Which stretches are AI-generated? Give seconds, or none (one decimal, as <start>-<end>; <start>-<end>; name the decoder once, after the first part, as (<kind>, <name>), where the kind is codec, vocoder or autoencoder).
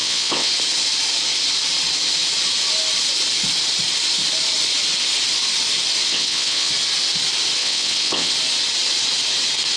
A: 0.0-0.5 (vocoder, WaveNeXt); 6.1-6.7; 7.6-8.3